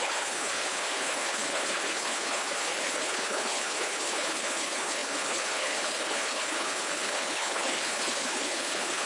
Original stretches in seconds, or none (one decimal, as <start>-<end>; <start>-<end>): none